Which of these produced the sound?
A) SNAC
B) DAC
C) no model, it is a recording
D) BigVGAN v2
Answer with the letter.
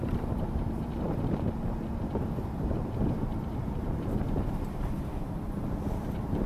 D